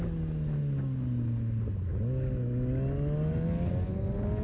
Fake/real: real